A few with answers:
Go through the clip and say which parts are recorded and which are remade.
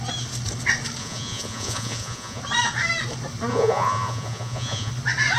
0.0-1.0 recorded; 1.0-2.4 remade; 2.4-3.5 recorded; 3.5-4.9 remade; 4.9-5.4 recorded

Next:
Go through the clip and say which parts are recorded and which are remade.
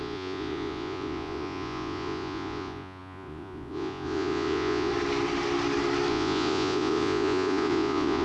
0.0-4.9 remade; 4.9-6.1 recorded; 6.1-8.2 remade